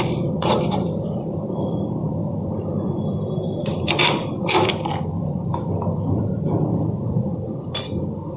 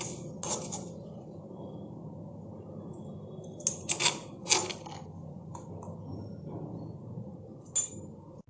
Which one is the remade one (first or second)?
first